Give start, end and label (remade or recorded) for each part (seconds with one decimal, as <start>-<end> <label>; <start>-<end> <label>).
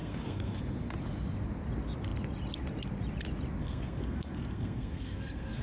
0.0-0.6 remade; 0.6-3.6 recorded; 3.6-5.6 remade